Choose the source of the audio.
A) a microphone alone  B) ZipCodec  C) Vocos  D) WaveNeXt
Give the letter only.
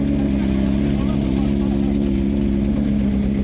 A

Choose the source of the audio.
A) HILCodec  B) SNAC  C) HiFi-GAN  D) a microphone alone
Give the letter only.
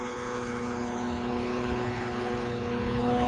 A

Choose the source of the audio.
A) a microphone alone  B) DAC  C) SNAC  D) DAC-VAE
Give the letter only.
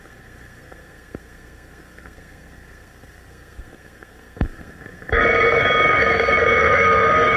C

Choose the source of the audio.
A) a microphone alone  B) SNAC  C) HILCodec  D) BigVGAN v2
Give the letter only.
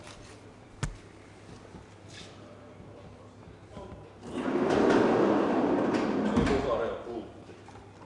A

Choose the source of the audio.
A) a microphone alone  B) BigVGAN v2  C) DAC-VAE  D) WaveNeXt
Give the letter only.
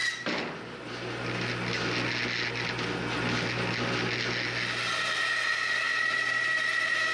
A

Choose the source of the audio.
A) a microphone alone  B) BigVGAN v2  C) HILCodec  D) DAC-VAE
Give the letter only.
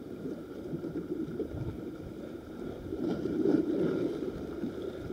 B